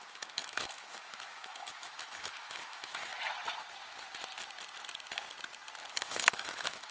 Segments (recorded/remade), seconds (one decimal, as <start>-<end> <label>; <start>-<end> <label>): 0.0-3.1 remade; 3.1-5.9 recorded; 5.9-6.9 remade